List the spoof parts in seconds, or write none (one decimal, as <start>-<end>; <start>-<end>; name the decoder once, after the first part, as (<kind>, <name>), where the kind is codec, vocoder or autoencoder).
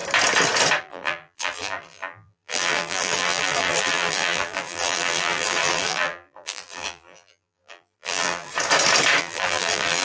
0.8-8.5 (vocoder, BigVGAN v2); 9.2-10.0